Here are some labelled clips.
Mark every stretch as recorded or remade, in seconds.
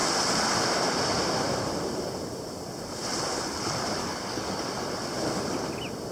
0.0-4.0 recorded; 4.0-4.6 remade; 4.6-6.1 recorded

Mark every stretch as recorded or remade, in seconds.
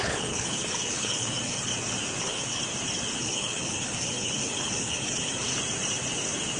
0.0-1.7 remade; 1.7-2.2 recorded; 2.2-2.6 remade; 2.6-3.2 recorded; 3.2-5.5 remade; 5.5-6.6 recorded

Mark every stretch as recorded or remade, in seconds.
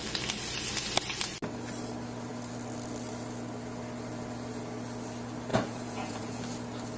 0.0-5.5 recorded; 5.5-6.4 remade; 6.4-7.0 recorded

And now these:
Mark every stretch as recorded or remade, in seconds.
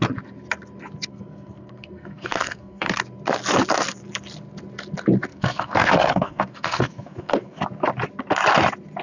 0.0-1.1 recorded; 1.1-3.0 remade; 3.0-5.3 recorded; 5.3-7.6 remade; 7.6-9.0 recorded